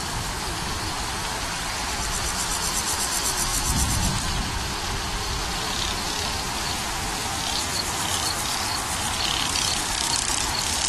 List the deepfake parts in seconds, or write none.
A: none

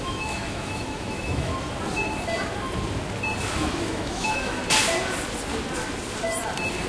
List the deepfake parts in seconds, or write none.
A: 0.0-1.5 (autoencoder, DAC-VAE); 3.6-4.6

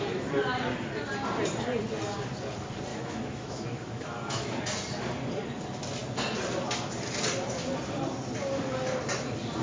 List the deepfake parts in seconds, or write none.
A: 2.9-4.6 (autoencoder, DAC-VAE)

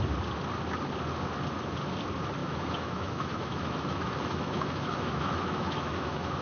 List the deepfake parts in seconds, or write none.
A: 2.4-6.4 (autoencoder, DAC-VAE)

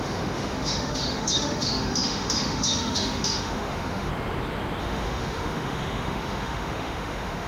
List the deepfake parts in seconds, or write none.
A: 0.0-4.1 (autoencoder, DAC-VAE); 4.8-7.5

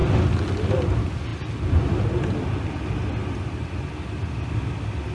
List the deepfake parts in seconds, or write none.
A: none